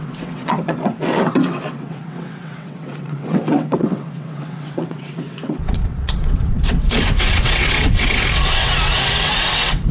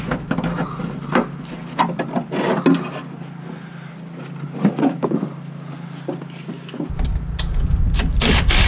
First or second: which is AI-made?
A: first